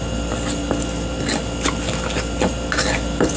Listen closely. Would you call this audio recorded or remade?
recorded